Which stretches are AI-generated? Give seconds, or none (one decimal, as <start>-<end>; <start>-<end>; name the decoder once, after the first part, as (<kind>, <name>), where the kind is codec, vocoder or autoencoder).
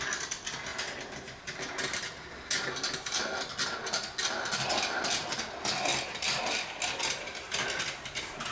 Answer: 5.9-7.1 (vocoder, BigVGAN v2)